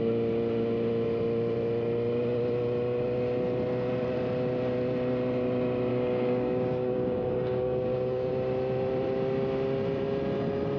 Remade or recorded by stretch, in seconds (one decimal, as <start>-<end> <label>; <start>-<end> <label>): 0.0-5.9 recorded; 5.9-8.3 remade; 8.3-10.8 recorded